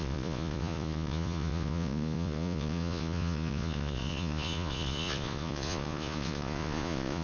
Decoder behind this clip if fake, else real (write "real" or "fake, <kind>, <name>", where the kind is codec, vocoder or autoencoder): fake, vocoder, Vocos